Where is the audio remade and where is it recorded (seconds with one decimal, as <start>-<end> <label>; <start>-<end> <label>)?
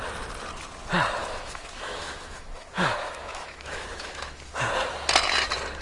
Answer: 0.0-1.2 recorded; 1.2-4.7 remade; 4.7-5.8 recorded